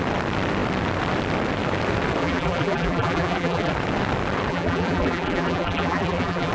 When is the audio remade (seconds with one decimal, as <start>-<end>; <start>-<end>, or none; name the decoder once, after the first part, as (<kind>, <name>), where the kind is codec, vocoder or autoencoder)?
2.2-3.7 (vocoder, BigVGAN v2); 4.5-6.5